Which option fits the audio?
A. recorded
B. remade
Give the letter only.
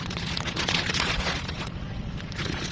B